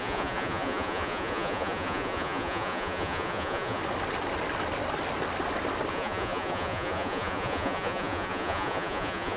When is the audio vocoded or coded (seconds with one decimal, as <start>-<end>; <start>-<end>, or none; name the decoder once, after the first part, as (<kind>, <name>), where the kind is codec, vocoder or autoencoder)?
0.0-3.8 (vocoder, Vocos); 5.9-9.4